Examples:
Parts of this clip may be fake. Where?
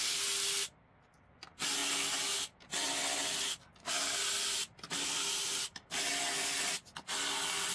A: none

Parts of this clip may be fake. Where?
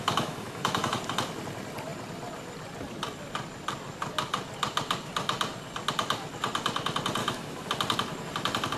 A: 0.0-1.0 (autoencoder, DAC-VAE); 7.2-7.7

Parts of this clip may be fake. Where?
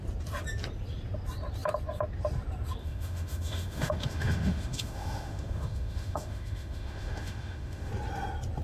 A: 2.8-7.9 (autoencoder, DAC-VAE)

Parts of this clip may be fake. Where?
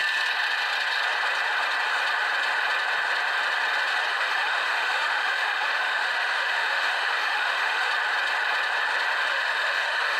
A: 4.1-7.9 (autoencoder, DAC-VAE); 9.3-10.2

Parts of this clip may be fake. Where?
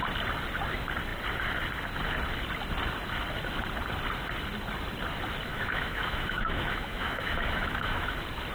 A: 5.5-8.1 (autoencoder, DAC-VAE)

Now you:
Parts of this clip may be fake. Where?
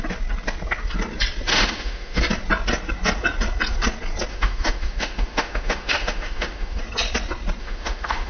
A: 1.5-2.2 (autoencoder, DAC-VAE); 4.3-6.8; 7.6-8.3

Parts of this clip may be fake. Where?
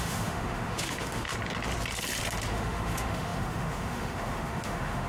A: 0.0-1.3 (autoencoder, DAC-VAE); 2.5-5.1